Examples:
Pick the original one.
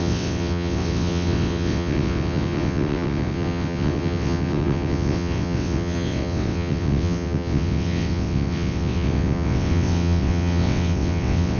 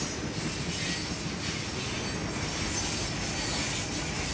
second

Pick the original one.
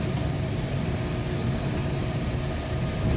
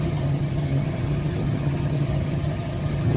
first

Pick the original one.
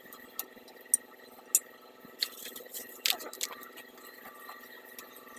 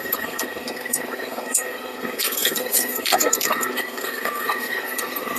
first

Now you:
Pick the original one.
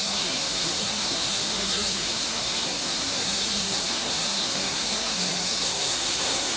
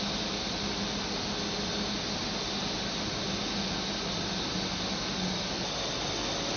second